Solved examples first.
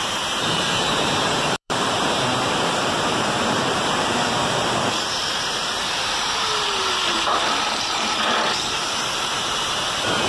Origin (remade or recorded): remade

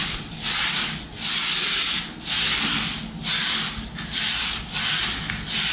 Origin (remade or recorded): recorded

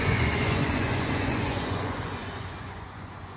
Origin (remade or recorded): remade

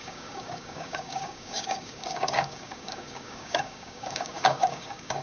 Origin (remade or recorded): remade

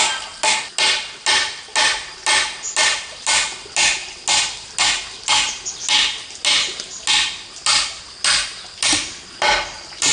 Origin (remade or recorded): recorded